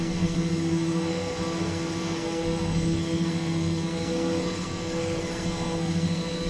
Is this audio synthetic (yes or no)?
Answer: yes